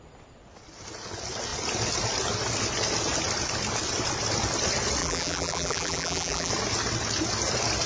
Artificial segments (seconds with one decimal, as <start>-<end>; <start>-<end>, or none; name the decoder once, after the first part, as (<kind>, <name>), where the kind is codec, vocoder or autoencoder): 5.0-6.5 (vocoder, BigVGAN v2)